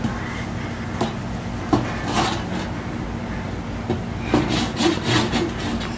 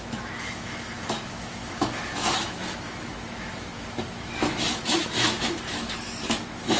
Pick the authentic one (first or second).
first